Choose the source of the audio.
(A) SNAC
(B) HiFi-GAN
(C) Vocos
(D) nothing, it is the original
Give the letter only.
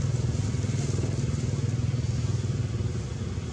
D